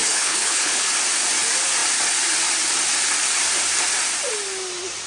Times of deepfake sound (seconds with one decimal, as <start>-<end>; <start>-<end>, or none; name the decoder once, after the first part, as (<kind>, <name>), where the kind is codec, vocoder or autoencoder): 0.0-0.9 (codec, HILCodec)